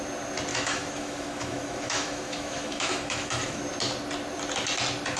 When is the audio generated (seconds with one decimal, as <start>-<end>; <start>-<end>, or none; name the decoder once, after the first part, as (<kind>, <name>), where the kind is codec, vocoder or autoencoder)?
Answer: 0.5-3.6 (autoencoder, DAC-VAE)